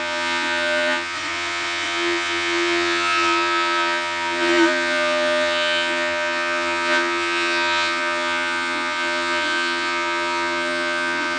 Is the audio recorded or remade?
remade